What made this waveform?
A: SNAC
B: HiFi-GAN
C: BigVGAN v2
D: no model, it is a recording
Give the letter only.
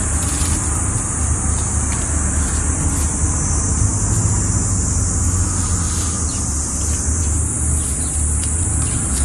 D